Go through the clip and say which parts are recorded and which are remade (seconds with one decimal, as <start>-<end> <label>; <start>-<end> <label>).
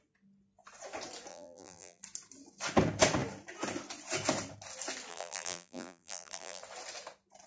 0.0-1.3 recorded; 1.3-2.0 remade; 2.0-5.1 recorded; 5.1-6.6 remade; 6.6-7.5 recorded